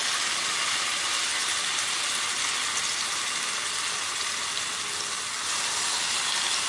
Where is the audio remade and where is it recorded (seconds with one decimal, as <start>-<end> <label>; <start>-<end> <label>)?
0.0-6.7 recorded